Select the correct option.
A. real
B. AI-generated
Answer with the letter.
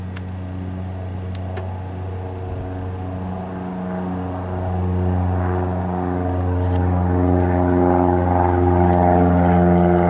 A